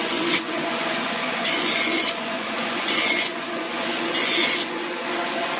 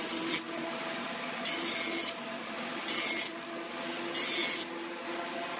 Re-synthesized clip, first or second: first